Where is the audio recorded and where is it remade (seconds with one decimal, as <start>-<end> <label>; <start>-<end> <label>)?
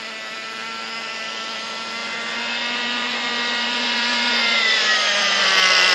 0.0-2.0 recorded; 2.0-5.5 remade; 5.5-5.9 recorded